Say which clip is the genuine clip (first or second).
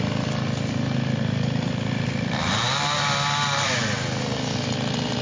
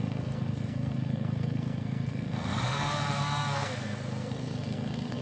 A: first